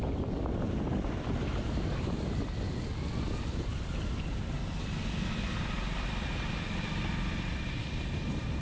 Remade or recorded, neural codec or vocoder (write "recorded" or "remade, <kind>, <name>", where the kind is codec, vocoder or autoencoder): remade, vocoder, BigVGAN v2